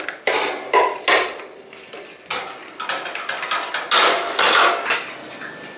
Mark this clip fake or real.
real